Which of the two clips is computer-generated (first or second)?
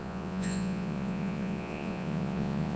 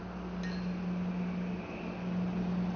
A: first